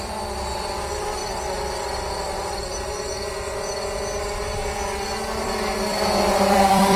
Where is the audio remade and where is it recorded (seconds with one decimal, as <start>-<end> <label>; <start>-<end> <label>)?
0.0-1.2 remade; 1.2-5.4 recorded; 5.4-7.0 remade